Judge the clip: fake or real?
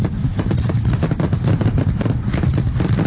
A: real